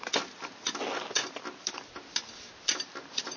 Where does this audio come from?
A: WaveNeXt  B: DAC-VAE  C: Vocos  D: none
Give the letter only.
D